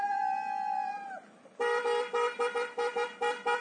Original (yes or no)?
yes